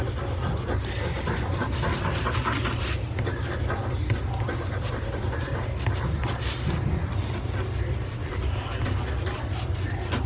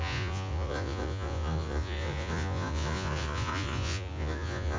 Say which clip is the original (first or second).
first